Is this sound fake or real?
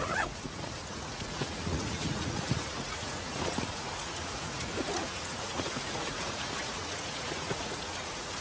fake